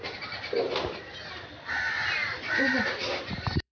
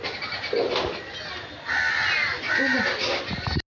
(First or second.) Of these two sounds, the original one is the second